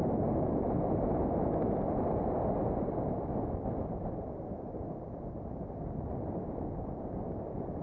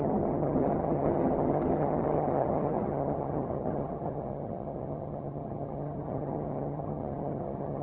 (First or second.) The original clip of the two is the first